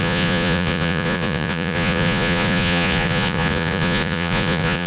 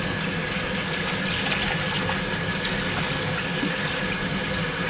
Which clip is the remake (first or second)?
first